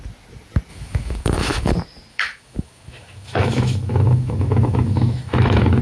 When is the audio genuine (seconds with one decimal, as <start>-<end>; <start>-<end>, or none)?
0.0-0.7; 1.7-2.1